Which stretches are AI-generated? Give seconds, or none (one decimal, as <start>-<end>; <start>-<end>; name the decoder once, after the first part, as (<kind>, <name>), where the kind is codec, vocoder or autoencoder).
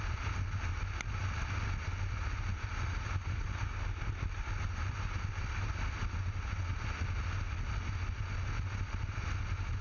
none